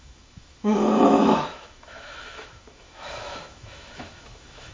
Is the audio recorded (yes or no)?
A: no